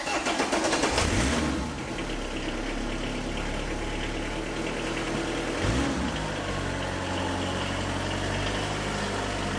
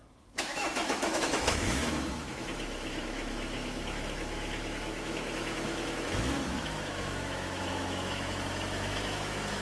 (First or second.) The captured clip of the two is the first